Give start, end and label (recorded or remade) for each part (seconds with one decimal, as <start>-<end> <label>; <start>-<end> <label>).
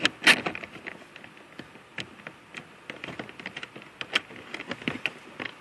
0.0-5.6 recorded